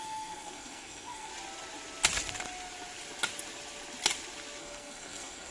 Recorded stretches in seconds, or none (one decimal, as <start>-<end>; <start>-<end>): 1.3-4.6